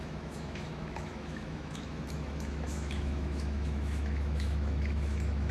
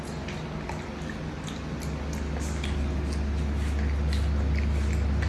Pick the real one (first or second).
second